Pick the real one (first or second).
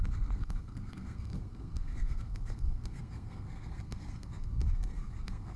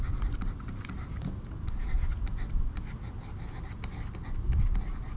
second